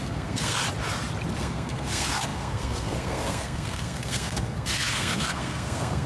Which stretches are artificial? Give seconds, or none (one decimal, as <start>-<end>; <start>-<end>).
0.0-0.6; 1.4-6.1